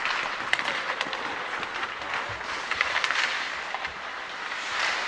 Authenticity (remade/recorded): recorded